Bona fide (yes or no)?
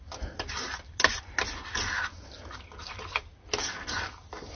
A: yes